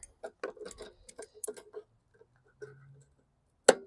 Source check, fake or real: real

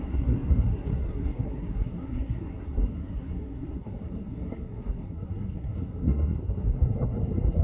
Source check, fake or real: fake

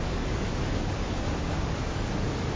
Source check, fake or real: fake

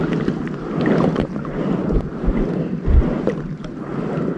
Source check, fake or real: real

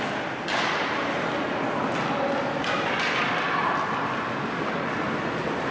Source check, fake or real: real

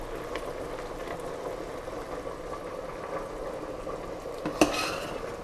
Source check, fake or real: real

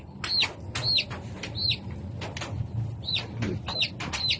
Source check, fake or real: real